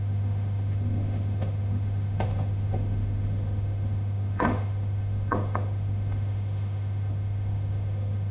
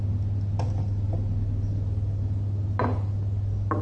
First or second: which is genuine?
second